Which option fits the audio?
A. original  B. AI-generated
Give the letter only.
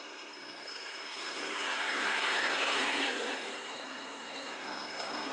B